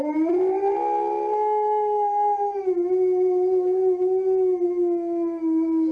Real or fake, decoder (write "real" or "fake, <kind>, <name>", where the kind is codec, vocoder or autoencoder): real